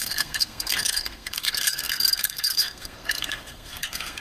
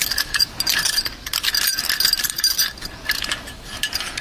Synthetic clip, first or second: first